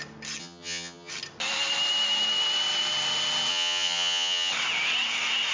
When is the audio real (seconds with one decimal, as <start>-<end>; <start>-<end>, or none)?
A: 0.0-0.4; 1.1-3.5; 4.5-5.5